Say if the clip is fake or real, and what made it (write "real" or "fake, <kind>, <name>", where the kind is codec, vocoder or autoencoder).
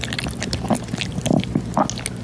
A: real